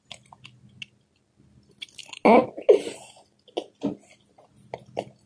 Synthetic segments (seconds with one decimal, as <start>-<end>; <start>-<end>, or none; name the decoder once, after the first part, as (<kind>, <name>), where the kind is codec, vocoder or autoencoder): none